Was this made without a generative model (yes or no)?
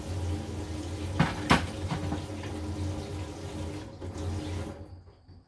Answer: yes